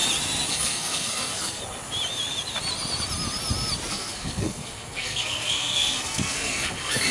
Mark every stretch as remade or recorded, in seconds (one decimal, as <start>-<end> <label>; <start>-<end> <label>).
0.0-0.5 recorded; 0.5-1.6 remade; 1.6-3.9 recorded; 3.9-7.1 remade